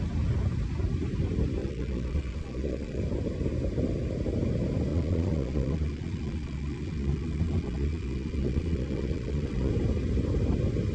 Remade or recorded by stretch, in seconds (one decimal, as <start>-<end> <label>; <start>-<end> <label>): 0.0-1.6 recorded; 1.6-3.0 remade; 3.0-4.9 recorded; 4.9-9.7 remade; 9.7-10.9 recorded

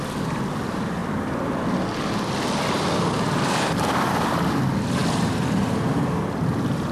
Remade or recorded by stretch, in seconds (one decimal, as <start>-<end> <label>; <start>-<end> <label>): 0.0-6.9 recorded

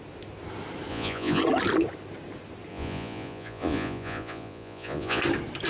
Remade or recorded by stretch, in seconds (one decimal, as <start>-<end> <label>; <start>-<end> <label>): 0.0-0.9 recorded; 0.9-1.4 remade; 1.4-2.7 recorded; 2.7-5.2 remade; 5.2-5.7 recorded

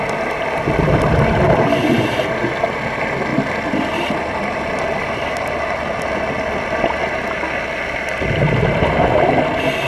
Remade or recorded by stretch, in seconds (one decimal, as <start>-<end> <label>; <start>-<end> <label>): 0.0-3.3 recorded; 3.3-6.2 remade; 6.2-9.9 recorded

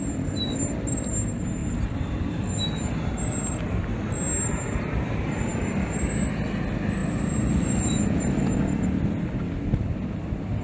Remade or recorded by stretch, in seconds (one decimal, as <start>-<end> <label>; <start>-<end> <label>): 0.0-1.6 recorded; 1.6-3.7 remade; 3.7-7.0 recorded; 7.0-8.4 remade; 8.4-10.6 recorded